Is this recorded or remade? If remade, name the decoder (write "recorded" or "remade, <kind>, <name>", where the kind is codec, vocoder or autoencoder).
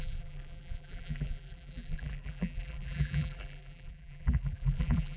remade, vocoder, BigVGAN v2